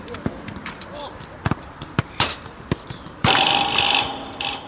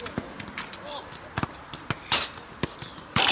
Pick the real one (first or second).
second